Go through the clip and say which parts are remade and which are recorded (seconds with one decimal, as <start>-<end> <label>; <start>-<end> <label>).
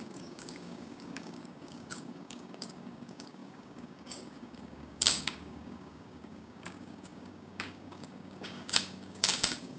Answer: 0.0-9.8 remade